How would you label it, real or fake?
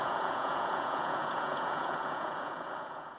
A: fake